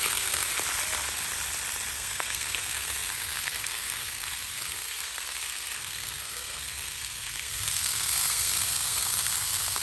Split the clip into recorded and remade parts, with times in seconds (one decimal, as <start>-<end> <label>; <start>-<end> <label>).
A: 0.0-0.5 remade; 0.5-1.9 recorded; 1.9-9.8 remade